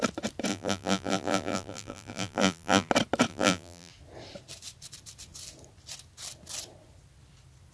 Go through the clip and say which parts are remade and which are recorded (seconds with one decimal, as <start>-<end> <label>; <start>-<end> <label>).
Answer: 0.0-0.5 recorded; 0.5-2.9 remade; 2.9-3.3 recorded; 3.3-3.9 remade; 3.9-7.7 recorded

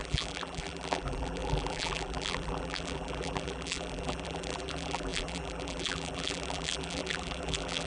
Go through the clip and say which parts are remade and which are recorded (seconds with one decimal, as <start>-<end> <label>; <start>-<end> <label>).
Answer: 0.0-7.9 remade

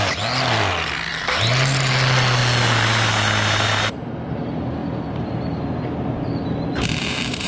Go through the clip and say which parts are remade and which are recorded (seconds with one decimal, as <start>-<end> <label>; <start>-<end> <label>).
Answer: 0.0-1.1 recorded; 1.1-1.9 remade; 1.9-6.7 recorded; 6.7-7.5 remade

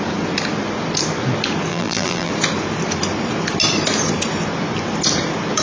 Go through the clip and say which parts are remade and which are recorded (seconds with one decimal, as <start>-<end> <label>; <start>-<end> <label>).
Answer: 0.0-1.7 recorded; 1.7-2.3 remade; 2.3-5.6 recorded

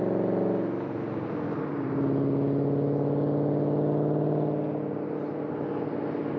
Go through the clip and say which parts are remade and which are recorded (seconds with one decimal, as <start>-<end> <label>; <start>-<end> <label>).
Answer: 0.0-6.4 recorded

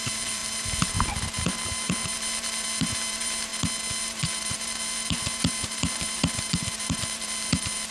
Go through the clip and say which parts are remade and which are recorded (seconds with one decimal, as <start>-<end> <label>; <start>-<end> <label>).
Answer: 0.0-3.5 remade; 3.5-4.0 recorded; 4.0-7.9 remade